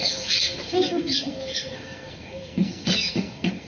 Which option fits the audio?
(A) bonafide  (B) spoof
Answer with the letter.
B